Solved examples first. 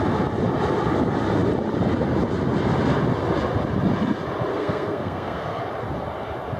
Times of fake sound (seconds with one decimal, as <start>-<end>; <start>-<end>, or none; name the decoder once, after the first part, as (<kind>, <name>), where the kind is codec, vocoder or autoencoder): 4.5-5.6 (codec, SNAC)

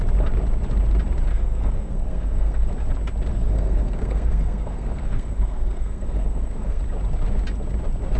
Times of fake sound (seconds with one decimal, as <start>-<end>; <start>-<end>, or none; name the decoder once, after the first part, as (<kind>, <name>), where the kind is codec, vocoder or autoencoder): 1.3-2.7 (codec, SNAC); 3.3-6.8

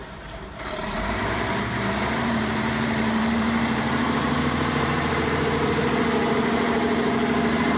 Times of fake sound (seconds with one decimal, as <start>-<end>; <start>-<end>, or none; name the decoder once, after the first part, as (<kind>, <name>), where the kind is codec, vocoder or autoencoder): 0.0-7.8 (vocoder, BigVGAN v2)

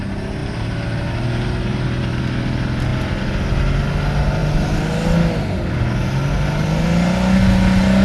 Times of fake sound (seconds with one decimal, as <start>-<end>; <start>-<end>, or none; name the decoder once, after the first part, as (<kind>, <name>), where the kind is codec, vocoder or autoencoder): none